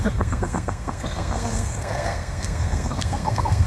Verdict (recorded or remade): remade